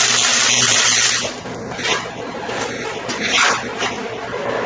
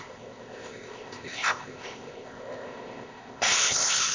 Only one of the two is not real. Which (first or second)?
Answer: second